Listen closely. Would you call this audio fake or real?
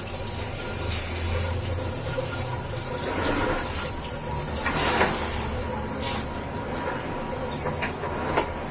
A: real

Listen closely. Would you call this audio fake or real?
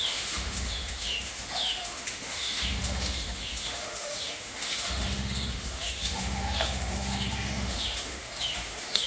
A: fake